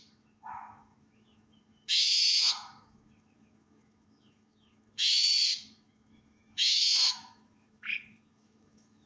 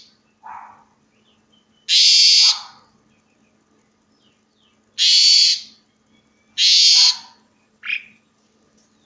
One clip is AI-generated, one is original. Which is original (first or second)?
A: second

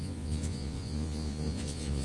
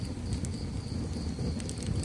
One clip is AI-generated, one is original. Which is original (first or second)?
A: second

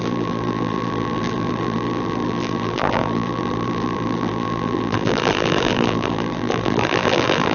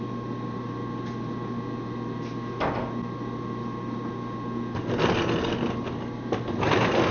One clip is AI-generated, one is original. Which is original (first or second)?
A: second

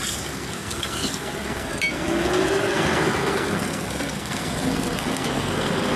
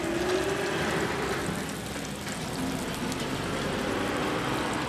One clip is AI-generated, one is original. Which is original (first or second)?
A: second